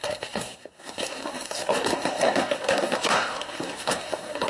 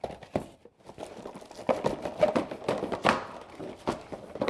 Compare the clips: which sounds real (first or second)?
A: second